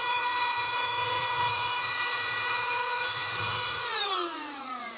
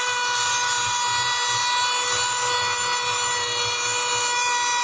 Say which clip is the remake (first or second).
first